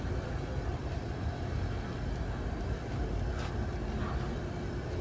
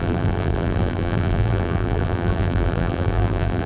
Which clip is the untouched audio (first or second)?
first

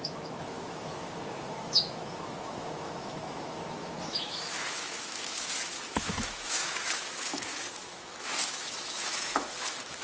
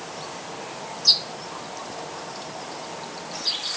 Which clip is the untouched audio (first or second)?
second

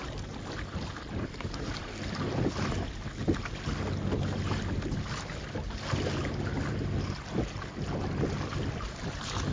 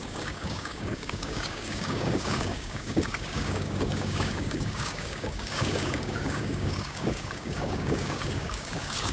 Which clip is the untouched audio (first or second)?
first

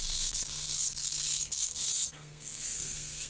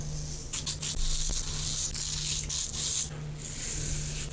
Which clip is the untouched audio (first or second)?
second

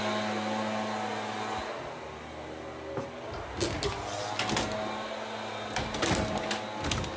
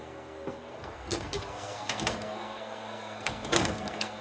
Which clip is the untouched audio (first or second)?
first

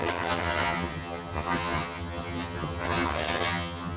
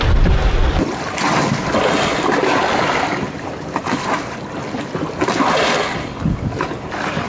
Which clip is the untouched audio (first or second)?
second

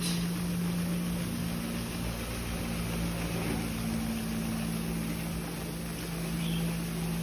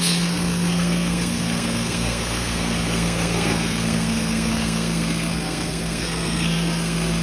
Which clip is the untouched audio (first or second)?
first